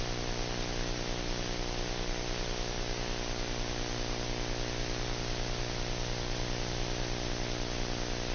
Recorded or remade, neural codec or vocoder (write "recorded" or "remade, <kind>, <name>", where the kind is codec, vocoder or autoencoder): recorded